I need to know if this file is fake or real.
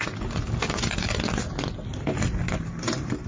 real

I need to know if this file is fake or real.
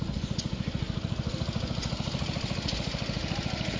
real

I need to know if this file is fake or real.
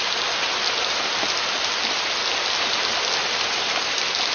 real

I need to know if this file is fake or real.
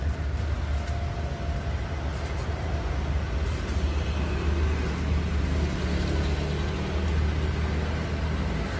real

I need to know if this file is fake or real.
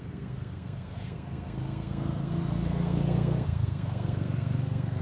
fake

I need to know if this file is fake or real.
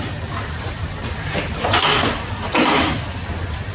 real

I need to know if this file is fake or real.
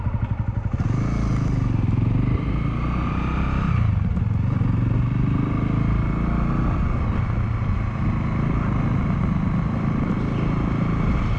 real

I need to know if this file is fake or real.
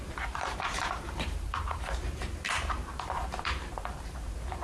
fake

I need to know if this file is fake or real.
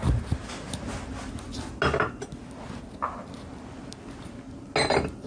real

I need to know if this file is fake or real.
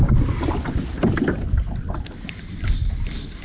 real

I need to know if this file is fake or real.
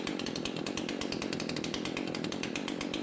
fake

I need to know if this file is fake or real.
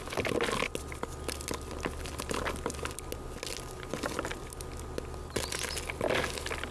real